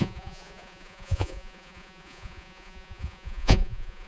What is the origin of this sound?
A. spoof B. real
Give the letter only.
A